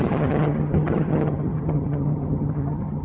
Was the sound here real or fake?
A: fake